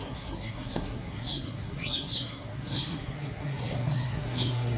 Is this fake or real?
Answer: fake